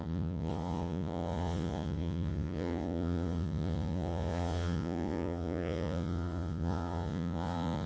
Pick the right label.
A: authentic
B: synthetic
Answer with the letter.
B